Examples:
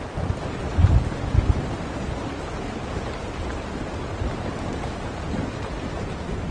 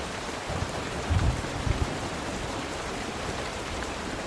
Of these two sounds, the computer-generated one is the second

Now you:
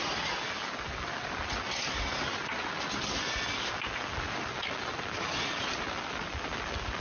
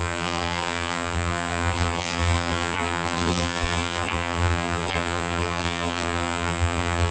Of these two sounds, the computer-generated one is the second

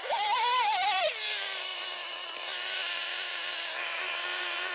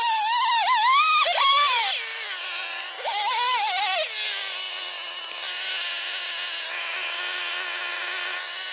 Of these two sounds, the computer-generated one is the first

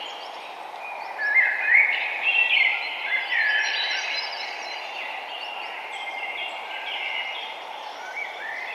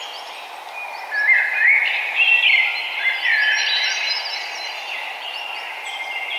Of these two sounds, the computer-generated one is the first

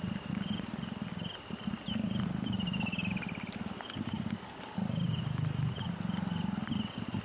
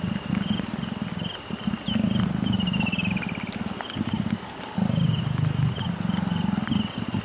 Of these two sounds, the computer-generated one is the first